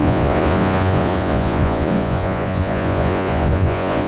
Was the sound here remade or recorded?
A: remade